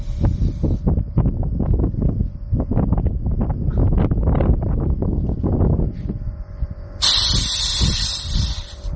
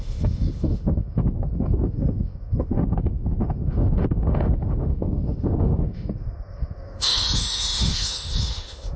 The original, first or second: first